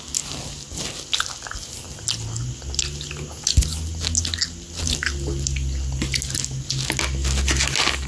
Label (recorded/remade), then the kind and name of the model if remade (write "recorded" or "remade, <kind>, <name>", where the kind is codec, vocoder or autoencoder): recorded